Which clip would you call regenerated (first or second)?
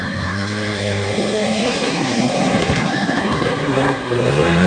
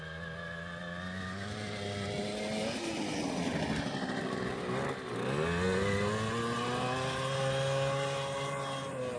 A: first